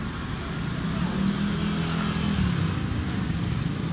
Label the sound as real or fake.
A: real